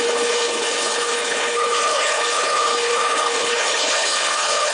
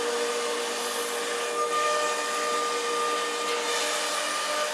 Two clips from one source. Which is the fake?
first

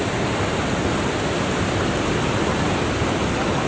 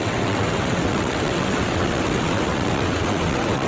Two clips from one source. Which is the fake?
second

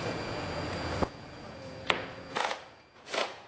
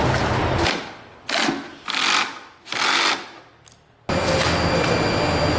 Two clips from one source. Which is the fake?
first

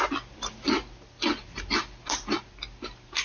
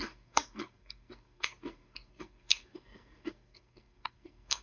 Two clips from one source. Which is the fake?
second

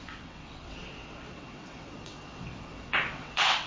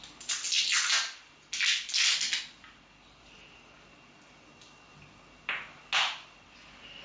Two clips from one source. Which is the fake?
first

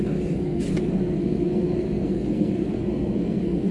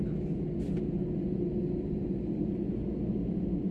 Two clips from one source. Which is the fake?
first